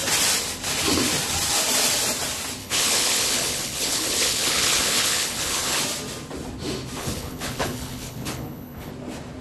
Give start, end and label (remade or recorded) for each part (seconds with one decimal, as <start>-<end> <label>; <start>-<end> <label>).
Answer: 0.0-2.6 recorded; 2.6-5.8 remade; 5.8-7.0 recorded; 7.0-8.9 remade; 8.9-9.4 recorded